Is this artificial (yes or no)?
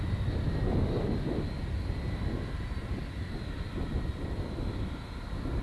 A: yes